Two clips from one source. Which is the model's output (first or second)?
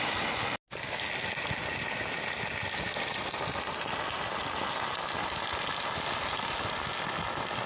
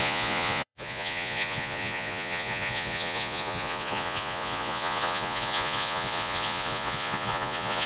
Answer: second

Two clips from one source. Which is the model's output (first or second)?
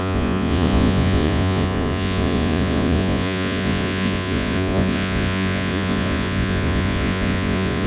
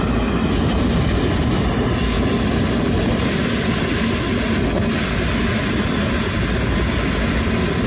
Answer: first